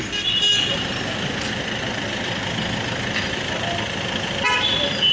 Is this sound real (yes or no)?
yes